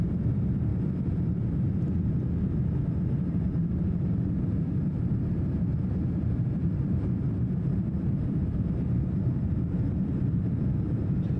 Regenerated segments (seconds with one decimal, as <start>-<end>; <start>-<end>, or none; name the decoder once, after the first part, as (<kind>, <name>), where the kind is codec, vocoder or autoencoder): 0.0-0.7 (vocoder, BigVGAN v2); 1.9-11.4